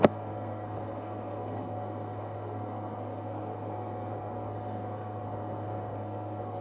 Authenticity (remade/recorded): remade